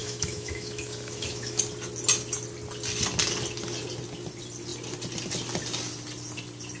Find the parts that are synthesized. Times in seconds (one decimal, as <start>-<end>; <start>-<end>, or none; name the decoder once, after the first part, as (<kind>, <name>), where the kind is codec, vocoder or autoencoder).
0.0-1.6 (autoencoder, DAC-VAE)

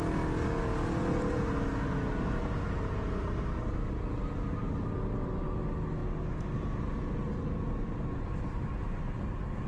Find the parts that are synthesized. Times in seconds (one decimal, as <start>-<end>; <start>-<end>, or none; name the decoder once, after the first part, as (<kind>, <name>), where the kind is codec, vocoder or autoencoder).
none

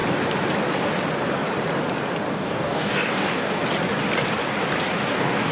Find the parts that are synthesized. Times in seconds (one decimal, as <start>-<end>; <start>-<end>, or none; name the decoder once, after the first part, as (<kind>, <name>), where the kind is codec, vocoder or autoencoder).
2.3-3.6 (codec, DAC); 5.1-5.5

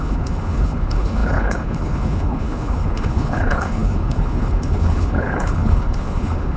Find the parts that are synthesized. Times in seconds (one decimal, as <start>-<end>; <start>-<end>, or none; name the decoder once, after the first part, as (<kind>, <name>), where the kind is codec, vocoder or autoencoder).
0.0-6.6 (codec, HILCodec)

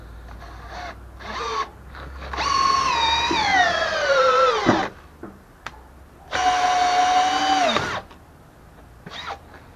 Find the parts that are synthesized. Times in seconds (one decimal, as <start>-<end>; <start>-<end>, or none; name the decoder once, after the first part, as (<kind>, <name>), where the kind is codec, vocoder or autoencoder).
none

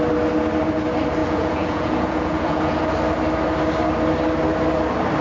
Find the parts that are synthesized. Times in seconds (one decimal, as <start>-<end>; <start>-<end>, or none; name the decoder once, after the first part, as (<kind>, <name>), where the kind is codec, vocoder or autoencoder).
1.2-2.8 (vocoder, Vocos)

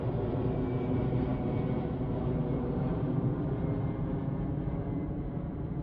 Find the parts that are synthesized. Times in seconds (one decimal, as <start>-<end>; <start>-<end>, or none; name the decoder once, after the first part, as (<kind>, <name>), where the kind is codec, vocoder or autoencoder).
none